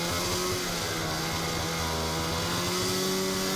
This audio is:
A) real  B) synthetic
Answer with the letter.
A